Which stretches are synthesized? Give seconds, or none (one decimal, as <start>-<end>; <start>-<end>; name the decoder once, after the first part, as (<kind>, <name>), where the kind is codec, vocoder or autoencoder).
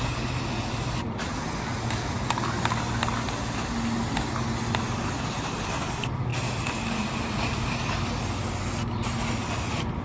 none